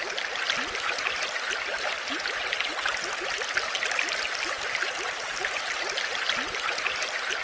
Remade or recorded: recorded